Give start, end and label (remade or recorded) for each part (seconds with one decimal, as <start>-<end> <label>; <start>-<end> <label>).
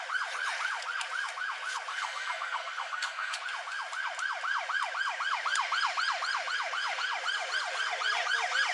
0.0-1.9 recorded; 1.9-3.4 remade; 3.4-8.7 recorded